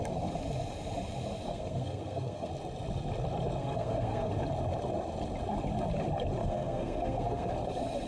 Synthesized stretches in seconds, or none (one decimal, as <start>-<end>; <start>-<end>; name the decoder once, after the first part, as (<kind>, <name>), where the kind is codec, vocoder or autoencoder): 1.5-2.5 (codec, SNAC); 3.6-4.3; 6.4-7.5